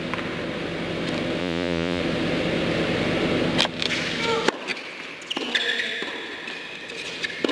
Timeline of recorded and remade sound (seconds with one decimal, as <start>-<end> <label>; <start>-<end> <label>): 0.0-1.4 recorded; 1.4-2.0 remade; 2.0-7.5 recorded